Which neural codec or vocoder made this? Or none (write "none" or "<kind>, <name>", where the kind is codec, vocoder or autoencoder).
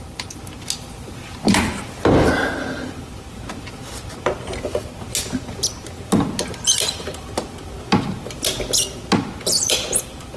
none